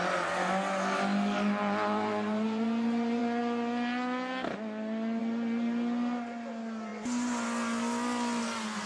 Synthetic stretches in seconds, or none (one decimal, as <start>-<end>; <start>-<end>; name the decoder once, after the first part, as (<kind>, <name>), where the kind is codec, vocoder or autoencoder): none